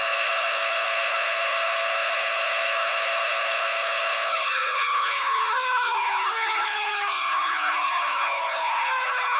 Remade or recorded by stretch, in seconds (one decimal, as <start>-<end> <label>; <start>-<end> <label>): 0.0-9.4 remade